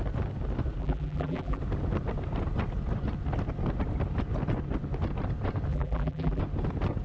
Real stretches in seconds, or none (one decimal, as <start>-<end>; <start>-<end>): 0.0-0.8; 1.6-5.7; 6.4-7.0